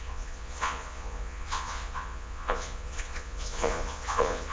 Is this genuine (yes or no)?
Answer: no